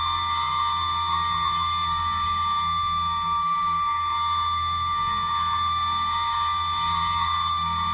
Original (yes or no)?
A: no